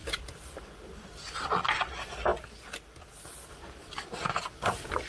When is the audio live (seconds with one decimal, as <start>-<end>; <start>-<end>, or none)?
0.6-5.1